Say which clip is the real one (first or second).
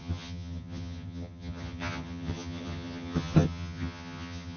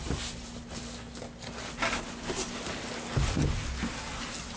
second